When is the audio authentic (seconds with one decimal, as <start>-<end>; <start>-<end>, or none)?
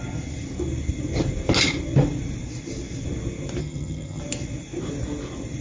0.0-3.6; 4.2-5.6